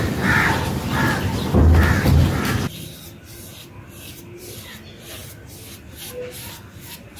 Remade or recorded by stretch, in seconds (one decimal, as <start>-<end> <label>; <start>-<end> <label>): 0.0-7.2 recorded